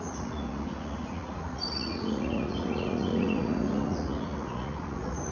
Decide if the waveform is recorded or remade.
remade